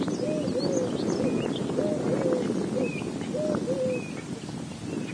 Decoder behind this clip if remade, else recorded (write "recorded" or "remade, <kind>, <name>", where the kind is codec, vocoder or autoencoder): recorded